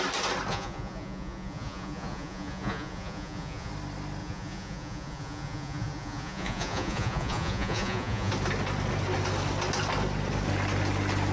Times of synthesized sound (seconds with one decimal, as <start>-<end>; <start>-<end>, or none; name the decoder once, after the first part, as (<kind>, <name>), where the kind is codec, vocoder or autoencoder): 0.5-3.7 (vocoder, Vocos); 4.2-8.3

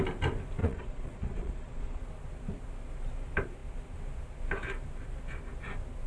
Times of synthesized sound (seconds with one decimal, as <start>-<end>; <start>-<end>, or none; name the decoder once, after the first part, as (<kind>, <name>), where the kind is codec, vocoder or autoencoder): 0.6-2.0 (vocoder, Vocos)

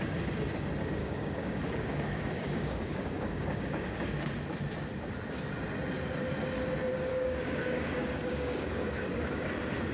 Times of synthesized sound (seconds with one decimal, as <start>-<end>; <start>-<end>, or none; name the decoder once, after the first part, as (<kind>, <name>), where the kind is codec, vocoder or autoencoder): 1.0-4.1 (codec, DAC); 6.9-9.5

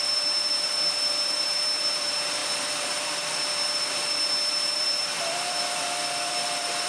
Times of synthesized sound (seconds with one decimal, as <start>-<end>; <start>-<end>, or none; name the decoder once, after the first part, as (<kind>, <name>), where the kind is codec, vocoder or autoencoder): 0.0-6.9 (vocoder, BigVGAN v2)

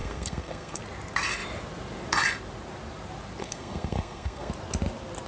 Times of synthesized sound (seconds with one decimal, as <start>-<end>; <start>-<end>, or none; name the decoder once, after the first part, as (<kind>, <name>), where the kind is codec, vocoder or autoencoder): 0.0-0.8 (codec, SNAC); 3.4-4.5

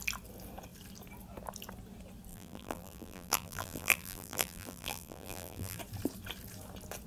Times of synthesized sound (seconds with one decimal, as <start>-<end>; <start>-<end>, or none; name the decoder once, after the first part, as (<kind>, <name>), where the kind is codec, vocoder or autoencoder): 2.3-5.8 (vocoder, BigVGAN v2)